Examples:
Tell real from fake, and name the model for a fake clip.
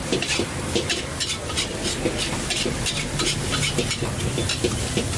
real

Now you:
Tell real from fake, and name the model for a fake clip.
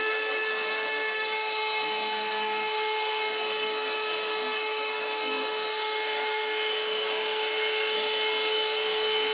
fake, codec, SNAC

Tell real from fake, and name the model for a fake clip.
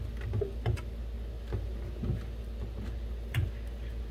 real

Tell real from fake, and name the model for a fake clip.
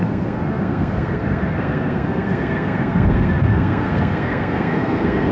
fake, codec, SNAC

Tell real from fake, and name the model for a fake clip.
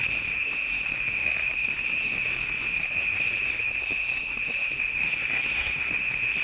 fake, codec, SNAC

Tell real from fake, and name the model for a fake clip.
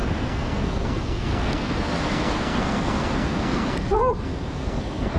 fake, codec, SNAC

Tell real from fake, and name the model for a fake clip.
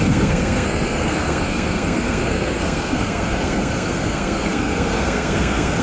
fake, codec, SNAC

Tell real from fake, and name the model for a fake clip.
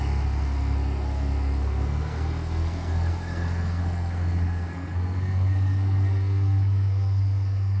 fake, codec, SNAC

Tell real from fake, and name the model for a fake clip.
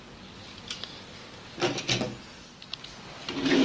real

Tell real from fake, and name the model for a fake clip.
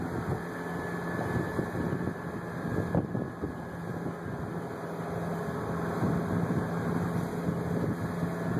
real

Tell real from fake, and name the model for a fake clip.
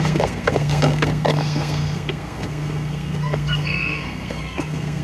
fake, codec, SNAC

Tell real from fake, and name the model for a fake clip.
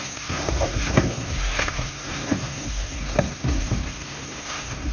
fake, codec, SNAC